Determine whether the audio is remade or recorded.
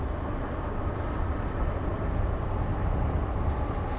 recorded